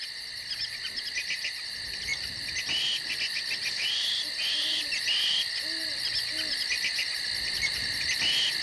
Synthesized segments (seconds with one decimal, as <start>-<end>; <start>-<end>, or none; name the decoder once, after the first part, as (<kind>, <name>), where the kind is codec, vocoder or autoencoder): none